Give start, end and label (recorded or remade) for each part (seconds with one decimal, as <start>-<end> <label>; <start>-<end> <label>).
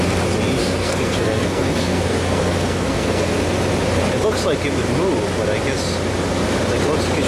0.0-0.6 recorded; 0.6-3.3 remade; 3.3-7.3 recorded